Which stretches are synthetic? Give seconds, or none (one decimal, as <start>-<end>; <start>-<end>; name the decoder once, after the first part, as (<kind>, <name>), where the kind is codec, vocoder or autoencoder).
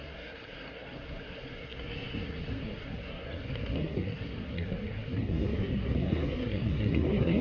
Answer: 0.0-7.4 (codec, SNAC)